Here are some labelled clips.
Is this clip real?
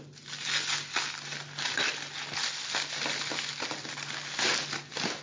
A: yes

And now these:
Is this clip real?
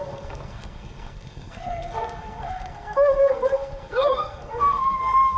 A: no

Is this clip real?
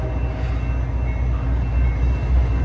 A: yes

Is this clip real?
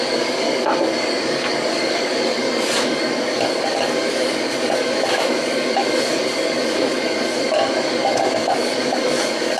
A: no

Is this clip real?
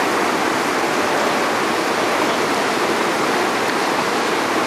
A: yes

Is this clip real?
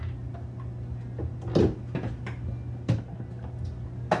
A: yes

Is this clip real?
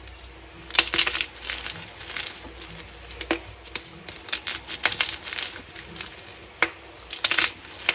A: yes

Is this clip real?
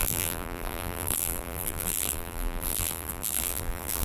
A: no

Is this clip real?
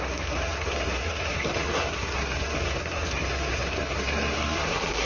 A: no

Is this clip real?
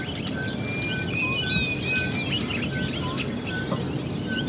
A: yes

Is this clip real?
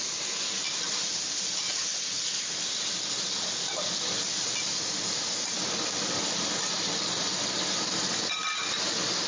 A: yes